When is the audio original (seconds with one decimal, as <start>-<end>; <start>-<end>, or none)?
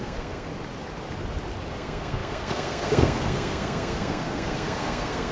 0.5-1.7